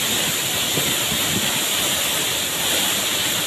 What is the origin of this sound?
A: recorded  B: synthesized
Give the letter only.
A